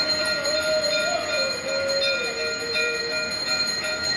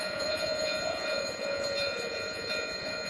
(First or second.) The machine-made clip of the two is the second